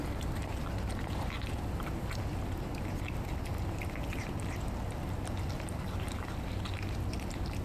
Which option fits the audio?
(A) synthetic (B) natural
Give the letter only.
B